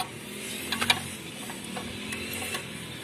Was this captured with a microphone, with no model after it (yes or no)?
yes